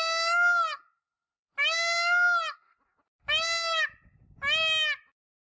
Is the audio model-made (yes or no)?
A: no